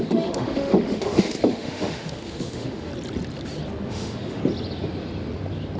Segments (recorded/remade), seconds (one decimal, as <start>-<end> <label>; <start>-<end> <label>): 0.0-2.9 remade; 2.9-3.9 recorded; 3.9-4.4 remade; 4.4-5.8 recorded

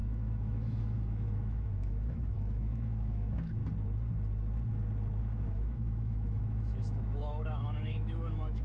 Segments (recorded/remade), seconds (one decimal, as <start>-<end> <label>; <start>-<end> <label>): 0.0-3.6 remade; 3.6-5.2 recorded; 5.2-8.6 remade

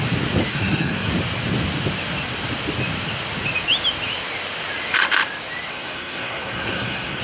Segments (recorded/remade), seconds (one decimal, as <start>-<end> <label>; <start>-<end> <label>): 0.0-0.5 recorded; 0.5-1.1 remade; 1.1-5.7 recorded; 5.7-7.2 remade